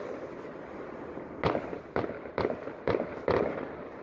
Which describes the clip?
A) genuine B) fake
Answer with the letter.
A